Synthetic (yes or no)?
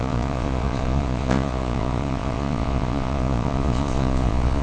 yes